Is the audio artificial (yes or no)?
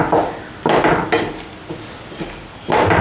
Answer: no